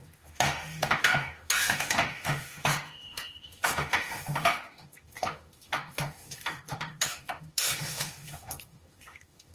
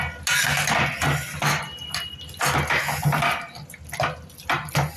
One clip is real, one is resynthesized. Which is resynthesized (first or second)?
first